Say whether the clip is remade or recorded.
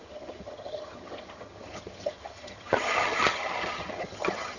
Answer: remade